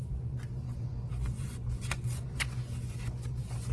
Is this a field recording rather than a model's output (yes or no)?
no